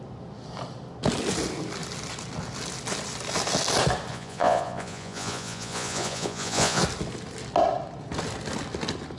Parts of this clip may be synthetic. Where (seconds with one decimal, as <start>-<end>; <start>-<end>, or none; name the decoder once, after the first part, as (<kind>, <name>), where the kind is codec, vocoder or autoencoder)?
4.1-6.8 (vocoder, Vocos)